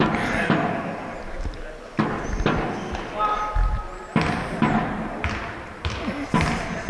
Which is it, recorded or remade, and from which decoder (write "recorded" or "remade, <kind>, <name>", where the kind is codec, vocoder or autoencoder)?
recorded